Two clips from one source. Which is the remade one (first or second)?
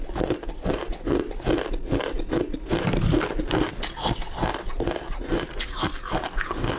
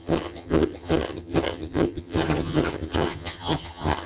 second